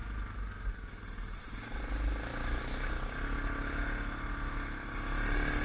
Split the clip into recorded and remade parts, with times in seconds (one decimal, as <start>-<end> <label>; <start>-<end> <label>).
0.0-5.6 recorded